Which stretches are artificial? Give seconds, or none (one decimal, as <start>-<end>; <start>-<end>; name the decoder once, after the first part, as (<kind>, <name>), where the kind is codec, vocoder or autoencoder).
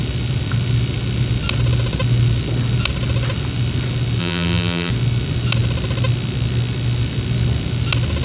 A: 4.2-4.9 (vocoder, BigVGAN v2)